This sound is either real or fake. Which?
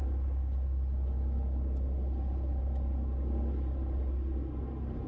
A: real